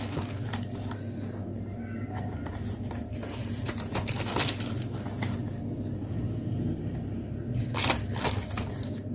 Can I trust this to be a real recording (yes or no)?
yes